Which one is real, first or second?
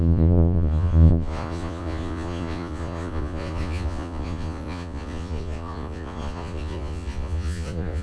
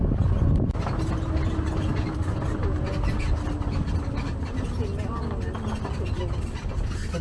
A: second